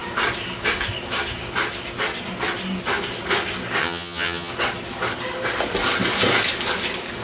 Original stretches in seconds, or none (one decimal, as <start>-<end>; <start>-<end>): 0.0-3.8; 4.5-7.2